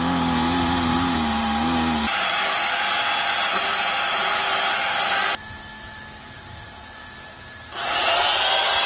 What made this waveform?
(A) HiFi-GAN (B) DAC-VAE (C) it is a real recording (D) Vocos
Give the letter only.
C